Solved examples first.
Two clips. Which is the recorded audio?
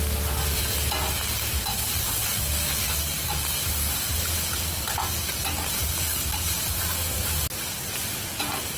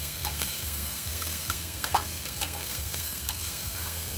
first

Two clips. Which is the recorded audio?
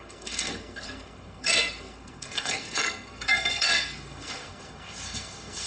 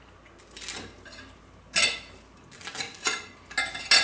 second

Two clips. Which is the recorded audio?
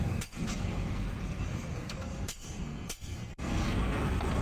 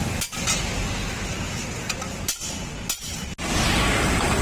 second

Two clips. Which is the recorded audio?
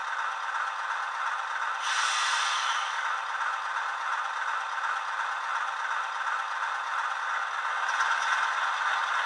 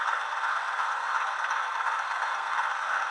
first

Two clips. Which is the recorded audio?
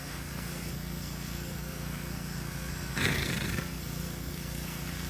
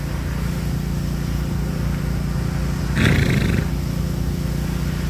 second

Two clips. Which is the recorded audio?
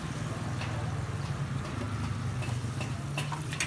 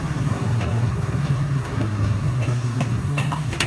first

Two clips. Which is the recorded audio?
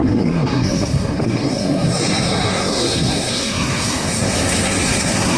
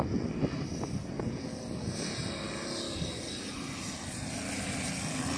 second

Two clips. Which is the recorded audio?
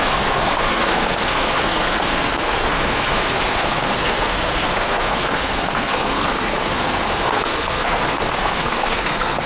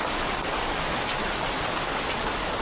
second